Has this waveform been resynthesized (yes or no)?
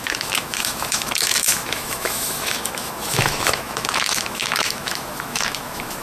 yes